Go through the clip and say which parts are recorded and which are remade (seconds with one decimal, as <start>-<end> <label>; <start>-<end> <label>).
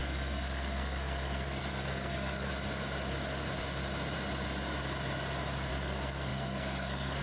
0.0-2.5 remade; 2.5-5.7 recorded; 5.7-7.2 remade